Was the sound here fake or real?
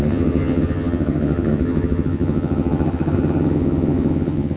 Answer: fake